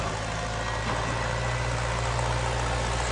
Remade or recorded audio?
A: recorded